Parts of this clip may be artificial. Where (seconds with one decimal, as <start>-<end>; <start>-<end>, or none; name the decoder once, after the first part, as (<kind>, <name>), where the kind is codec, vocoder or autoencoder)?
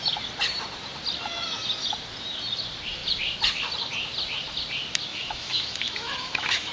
5.1-6.7 (autoencoder, DAC-VAE)